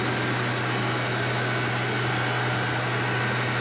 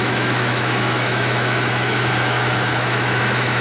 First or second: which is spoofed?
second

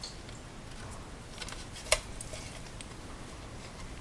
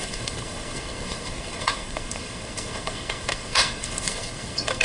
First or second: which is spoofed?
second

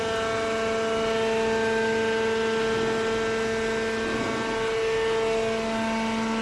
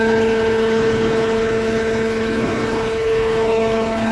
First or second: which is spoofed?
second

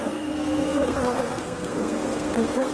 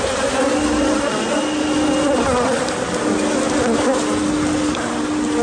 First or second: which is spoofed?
first